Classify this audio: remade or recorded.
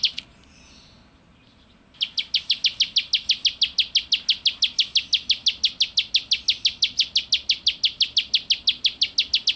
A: recorded